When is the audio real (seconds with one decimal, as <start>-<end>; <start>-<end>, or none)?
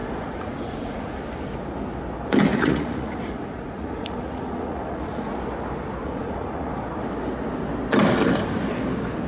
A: 1.2-2.5; 5.3-6.0; 6.7-9.3